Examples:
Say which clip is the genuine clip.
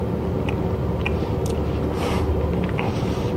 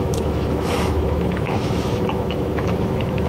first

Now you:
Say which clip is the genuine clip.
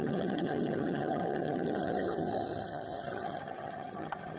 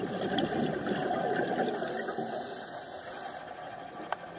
second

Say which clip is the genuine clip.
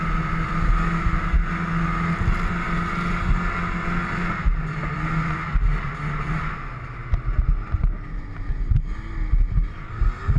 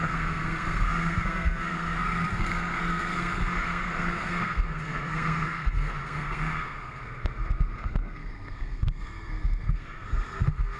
first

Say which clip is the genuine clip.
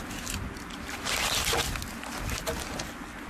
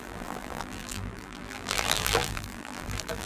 first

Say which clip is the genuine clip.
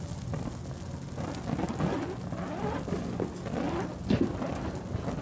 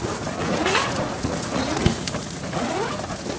first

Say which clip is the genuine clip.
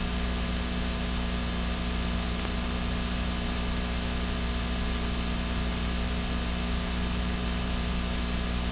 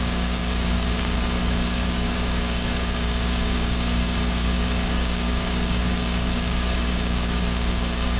first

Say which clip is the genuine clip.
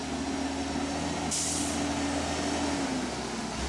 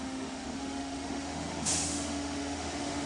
first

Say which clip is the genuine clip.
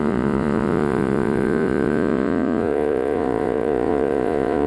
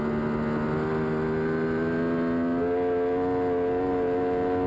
second